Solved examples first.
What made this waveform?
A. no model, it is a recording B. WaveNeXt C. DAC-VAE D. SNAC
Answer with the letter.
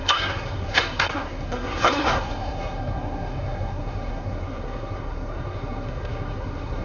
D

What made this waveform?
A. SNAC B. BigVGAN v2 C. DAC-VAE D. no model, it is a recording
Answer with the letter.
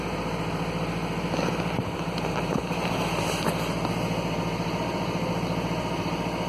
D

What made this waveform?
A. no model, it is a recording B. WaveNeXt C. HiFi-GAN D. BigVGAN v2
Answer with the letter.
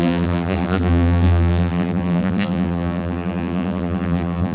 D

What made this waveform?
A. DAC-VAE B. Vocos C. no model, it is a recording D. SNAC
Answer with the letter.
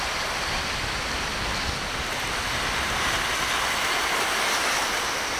C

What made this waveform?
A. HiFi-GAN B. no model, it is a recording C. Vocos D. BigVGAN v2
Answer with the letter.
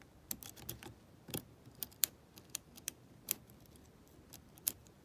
D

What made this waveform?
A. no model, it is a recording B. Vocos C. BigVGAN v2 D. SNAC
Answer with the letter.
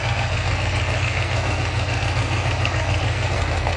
D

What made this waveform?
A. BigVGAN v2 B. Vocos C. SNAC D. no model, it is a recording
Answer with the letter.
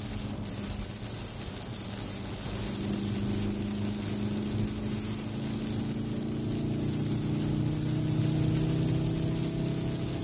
D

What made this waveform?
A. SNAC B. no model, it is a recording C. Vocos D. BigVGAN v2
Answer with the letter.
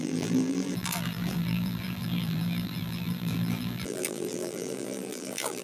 D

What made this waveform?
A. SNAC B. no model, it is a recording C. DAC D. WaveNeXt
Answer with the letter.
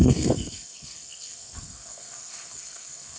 A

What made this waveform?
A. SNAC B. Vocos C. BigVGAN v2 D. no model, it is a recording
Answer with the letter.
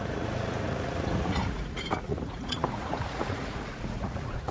B